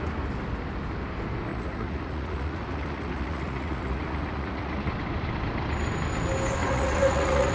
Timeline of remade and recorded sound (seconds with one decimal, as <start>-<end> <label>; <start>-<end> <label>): 0.0-1.5 recorded; 1.5-4.9 remade; 4.9-6.6 recorded; 6.6-7.5 remade